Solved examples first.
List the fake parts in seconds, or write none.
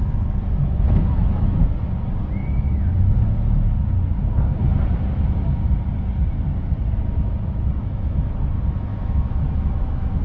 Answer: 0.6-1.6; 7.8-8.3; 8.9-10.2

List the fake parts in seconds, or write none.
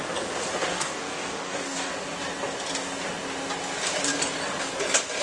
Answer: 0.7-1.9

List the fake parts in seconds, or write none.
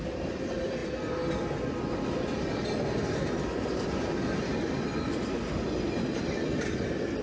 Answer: none